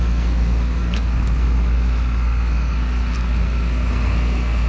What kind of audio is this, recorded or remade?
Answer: remade